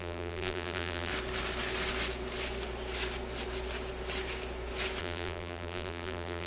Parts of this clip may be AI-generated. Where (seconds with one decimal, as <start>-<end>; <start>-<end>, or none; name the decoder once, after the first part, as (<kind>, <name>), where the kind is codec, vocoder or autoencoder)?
0.0-1.1 (vocoder, BigVGAN v2); 5.0-6.5